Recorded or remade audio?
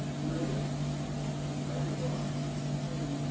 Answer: recorded